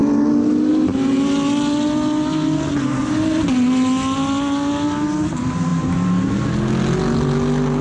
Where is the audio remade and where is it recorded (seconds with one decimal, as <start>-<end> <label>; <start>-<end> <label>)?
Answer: 0.0-7.8 recorded